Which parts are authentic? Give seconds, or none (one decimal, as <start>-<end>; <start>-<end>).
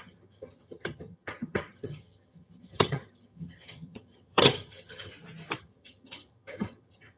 5.1-5.6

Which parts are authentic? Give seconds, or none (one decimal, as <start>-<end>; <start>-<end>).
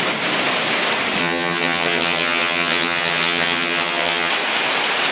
0.0-1.2; 4.3-5.1